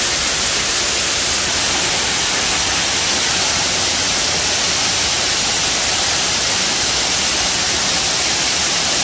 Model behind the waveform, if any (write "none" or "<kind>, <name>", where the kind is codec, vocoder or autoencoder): none